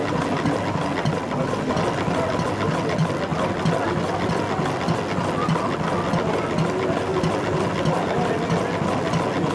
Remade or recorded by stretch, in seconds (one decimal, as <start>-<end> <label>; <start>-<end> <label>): 0.0-9.5 recorded